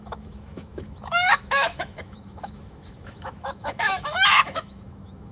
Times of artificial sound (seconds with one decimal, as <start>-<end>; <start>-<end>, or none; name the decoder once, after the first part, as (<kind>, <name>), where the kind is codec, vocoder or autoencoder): 0.0-5.3 (autoencoder, DAC-VAE)